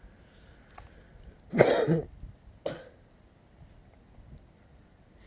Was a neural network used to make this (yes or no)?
no